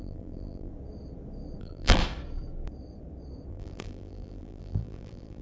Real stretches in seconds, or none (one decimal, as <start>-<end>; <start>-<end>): 0.7-1.6; 2.0-3.5